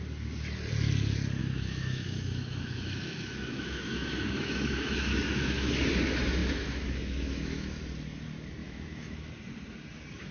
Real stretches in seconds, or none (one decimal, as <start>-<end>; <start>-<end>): 0.0-1.4; 5.7-6.4; 7.8-8.6; 9.3-10.3